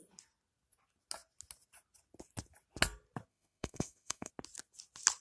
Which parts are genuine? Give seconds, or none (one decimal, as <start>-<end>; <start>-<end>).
0.0-3.3; 4.3-5.2